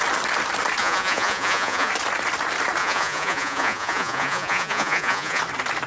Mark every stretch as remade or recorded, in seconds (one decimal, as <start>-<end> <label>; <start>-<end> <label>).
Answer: 0.0-0.8 recorded; 0.8-1.9 remade; 1.9-2.8 recorded; 2.8-5.4 remade; 5.4-5.9 recorded